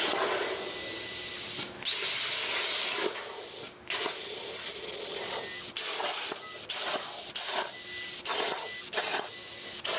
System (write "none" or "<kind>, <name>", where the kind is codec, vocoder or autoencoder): none